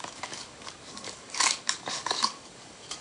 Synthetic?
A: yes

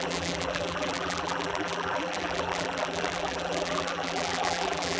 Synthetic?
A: yes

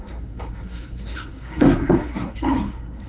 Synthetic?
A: yes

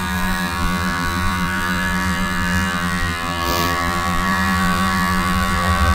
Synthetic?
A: yes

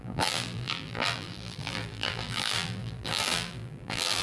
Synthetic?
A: yes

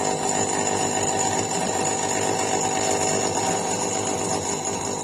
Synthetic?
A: no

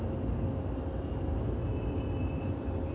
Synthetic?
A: no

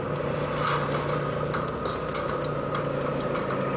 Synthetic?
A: no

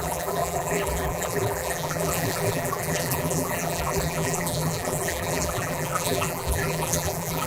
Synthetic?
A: yes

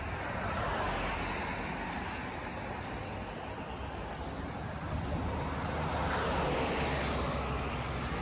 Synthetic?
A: no